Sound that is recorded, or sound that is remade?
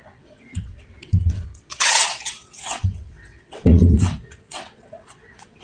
remade